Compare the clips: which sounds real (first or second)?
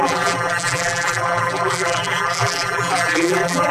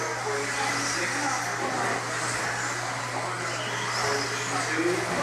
second